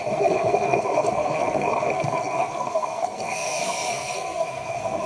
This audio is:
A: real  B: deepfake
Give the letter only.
B